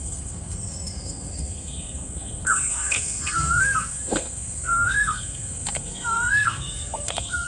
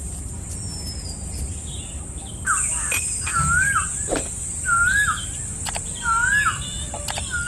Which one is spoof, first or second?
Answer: first